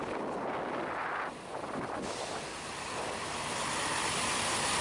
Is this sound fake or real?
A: real